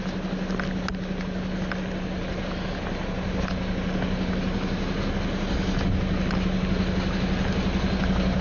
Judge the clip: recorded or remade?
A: recorded